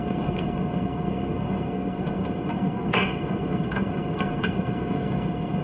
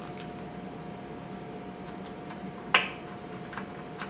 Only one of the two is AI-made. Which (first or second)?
first